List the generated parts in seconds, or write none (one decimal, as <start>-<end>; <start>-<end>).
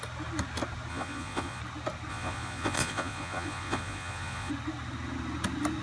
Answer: 0.9-1.6; 2.1-4.5